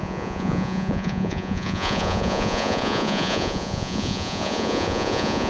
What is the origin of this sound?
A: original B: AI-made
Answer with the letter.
B